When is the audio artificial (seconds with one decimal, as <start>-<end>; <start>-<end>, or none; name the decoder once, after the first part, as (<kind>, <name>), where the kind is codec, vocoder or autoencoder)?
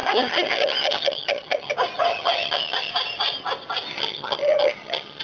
0.0-1.7 (vocoder, HiFi-GAN); 2.1-2.9; 3.9-5.2